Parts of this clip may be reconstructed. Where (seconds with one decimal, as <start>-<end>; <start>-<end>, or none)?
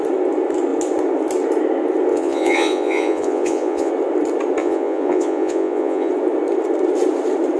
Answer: 2.1-3.9; 4.6-6.1